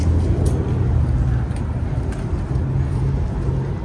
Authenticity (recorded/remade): recorded